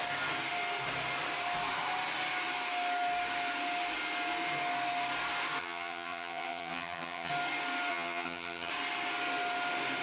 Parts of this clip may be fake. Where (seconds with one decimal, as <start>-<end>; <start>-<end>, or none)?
5.6-7.3; 7.9-8.7